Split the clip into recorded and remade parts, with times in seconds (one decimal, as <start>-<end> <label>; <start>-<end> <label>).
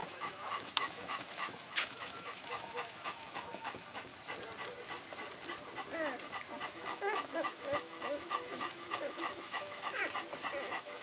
0.0-4.1 remade; 4.1-6.7 recorded; 6.7-10.0 remade; 10.0-10.6 recorded; 10.6-11.0 remade